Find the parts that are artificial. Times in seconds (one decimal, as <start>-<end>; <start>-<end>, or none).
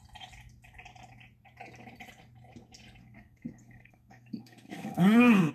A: 3.0-5.5